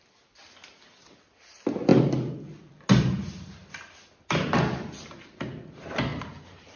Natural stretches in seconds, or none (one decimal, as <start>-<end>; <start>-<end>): 0.0-1.9; 2.9-6.1